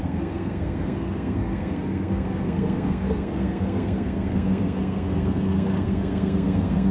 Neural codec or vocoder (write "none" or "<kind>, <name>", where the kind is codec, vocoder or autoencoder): codec, SNAC